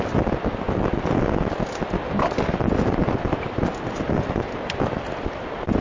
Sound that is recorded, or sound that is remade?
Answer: recorded